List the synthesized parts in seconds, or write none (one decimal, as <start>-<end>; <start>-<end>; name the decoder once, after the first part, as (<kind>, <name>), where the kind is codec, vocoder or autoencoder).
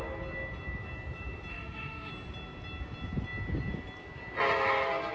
1.5-2.1 (autoencoder, DAC-VAE)